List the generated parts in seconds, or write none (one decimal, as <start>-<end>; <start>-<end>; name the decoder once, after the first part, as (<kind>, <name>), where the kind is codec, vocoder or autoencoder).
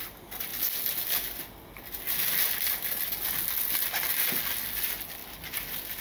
none